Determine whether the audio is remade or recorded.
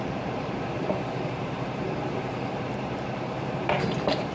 remade